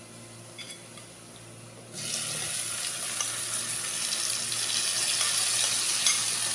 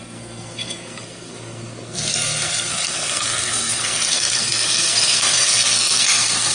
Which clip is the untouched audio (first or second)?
first